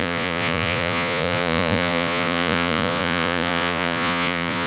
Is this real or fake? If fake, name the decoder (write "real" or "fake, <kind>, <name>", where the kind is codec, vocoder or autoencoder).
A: fake, vocoder, Vocos